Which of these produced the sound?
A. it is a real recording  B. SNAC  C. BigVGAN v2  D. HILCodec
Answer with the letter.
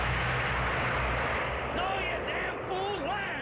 A